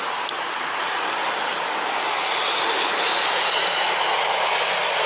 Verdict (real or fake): real